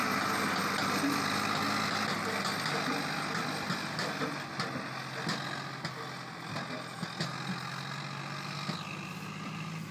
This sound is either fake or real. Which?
real